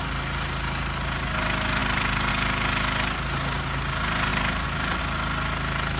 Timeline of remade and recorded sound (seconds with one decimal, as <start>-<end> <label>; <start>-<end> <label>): 0.0-1.8 recorded; 1.8-2.3 remade; 2.3-4.3 recorded; 4.3-5.0 remade; 5.0-6.0 recorded